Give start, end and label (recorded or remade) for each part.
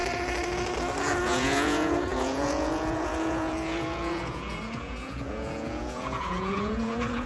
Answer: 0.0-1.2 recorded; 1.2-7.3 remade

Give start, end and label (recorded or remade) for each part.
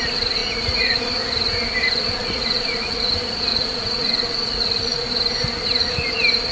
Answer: 0.0-0.4 recorded; 0.4-1.0 remade; 1.0-2.2 recorded; 2.2-3.1 remade; 3.1-3.5 recorded; 3.5-5.1 remade; 5.1-6.5 recorded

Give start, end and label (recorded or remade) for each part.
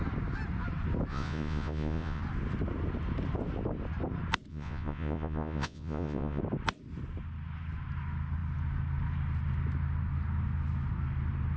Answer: 0.0-1.1 recorded; 1.1-2.2 remade; 2.2-4.5 recorded; 4.5-6.4 remade; 6.4-11.6 recorded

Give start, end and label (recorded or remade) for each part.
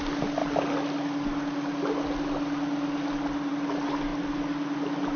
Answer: 0.0-5.2 recorded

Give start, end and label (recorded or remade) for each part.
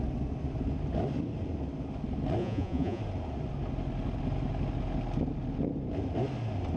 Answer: 0.0-2.4 recorded; 2.4-3.0 remade; 3.0-6.8 recorded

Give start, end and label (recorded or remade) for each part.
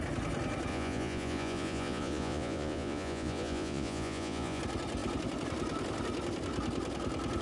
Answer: 0.0-0.7 recorded; 0.7-4.6 remade; 4.6-7.4 recorded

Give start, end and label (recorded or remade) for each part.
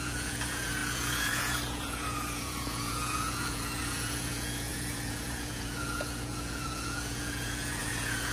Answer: 0.0-8.3 remade